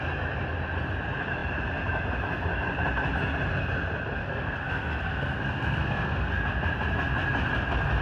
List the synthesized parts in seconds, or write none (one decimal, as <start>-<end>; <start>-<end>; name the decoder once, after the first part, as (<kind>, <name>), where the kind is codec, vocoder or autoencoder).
4.2-6.3 (codec, SNAC)